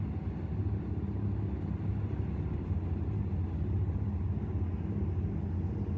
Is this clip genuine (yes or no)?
yes